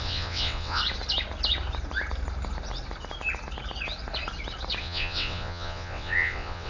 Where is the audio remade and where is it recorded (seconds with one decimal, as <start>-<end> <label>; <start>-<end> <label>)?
0.0-0.8 remade; 0.8-4.8 recorded; 4.8-6.7 remade